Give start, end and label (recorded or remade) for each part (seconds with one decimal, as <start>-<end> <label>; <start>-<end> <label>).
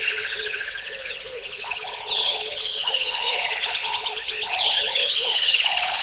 0.0-6.0 remade